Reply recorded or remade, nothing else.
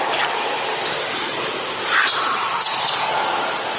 recorded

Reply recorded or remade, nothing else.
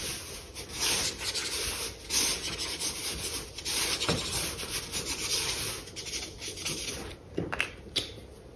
recorded